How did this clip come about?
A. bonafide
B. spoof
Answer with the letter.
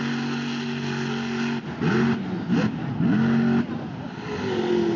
A